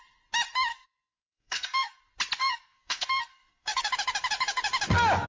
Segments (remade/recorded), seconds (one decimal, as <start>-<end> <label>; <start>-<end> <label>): 0.0-0.7 recorded; 0.7-2.0 remade; 2.0-2.4 recorded; 2.4-3.9 remade; 3.9-5.3 recorded